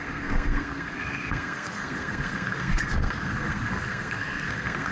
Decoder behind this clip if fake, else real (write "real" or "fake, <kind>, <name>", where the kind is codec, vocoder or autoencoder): fake, codec, SNAC